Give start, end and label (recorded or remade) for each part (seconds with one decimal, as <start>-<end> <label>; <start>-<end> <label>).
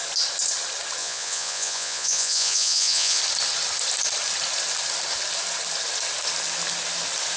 0.0-1.0 recorded; 1.0-3.2 remade; 3.2-7.4 recorded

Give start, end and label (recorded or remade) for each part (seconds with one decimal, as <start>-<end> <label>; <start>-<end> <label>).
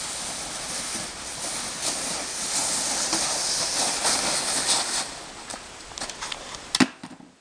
0.0-7.4 recorded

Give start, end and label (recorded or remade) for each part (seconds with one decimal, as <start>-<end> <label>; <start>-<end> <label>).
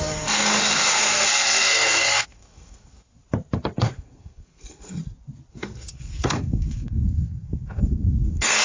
0.0-3.1 remade; 3.1-3.8 recorded; 3.8-5.0 remade; 5.0-5.5 recorded; 5.5-8.6 remade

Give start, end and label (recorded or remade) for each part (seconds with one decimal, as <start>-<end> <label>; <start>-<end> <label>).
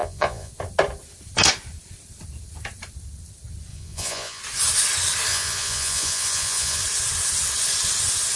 0.0-0.5 remade; 0.5-3.7 recorded; 3.7-4.4 remade; 4.4-5.3 recorded; 5.3-6.8 remade; 6.8-8.4 recorded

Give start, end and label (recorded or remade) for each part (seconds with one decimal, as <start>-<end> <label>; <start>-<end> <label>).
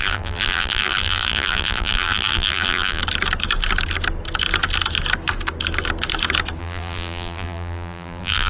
0.0-3.0 remade; 3.0-6.6 recorded; 6.6-8.5 remade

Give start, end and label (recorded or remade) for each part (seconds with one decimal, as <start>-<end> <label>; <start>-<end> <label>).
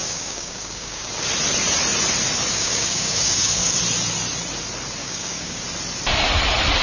0.0-1.1 remade; 1.1-2.5 recorded; 2.5-3.8 remade; 3.8-5.0 recorded; 5.0-5.6 remade; 5.6-6.8 recorded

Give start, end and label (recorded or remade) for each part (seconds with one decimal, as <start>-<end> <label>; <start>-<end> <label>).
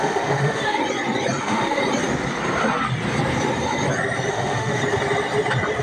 0.0-0.8 remade; 0.8-1.4 recorded; 1.4-1.8 remade; 1.8-4.3 recorded; 4.3-4.8 remade; 4.8-5.8 recorded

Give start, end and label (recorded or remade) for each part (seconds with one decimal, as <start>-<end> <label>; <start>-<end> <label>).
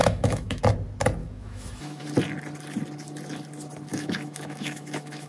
0.0-0.6 remade; 0.6-1.2 recorded; 1.2-2.0 remade; 2.0-3.9 recorded; 3.9-5.3 remade